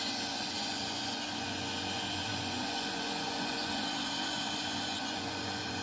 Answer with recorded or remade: remade